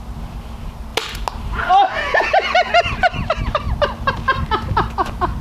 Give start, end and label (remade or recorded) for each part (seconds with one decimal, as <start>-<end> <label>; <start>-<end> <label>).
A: 0.0-5.4 recorded